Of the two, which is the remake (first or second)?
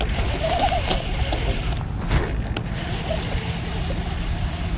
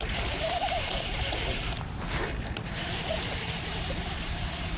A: second